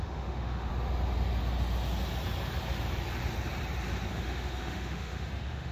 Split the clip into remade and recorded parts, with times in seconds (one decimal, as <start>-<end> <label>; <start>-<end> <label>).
0.0-0.7 remade; 0.7-4.1 recorded; 4.1-5.7 remade

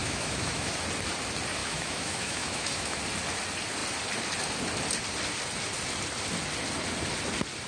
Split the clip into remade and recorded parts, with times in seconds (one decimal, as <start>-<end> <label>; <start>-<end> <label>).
0.0-0.7 remade; 0.7-1.6 recorded; 1.6-3.0 remade; 3.0-7.7 recorded

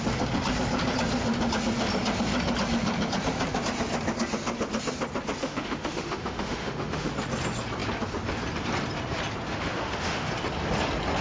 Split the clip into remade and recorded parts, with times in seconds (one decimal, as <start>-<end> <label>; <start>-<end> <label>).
0.0-5.4 recorded; 5.4-7.1 remade; 7.1-9.5 recorded; 9.5-10.3 remade; 10.3-11.2 recorded

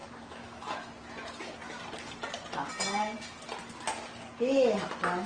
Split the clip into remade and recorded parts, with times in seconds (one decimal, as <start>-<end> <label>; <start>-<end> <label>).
0.0-0.9 remade; 0.9-5.3 recorded

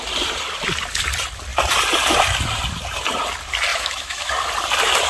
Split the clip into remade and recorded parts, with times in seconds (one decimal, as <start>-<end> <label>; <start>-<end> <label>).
0.0-3.7 recorded; 3.7-4.3 remade; 4.3-5.1 recorded

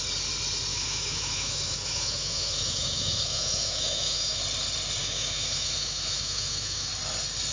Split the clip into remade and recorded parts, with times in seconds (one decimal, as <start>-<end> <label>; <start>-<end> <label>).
0.0-0.7 recorded; 0.7-4.4 remade; 4.4-5.0 recorded; 5.0-6.9 remade; 6.9-7.5 recorded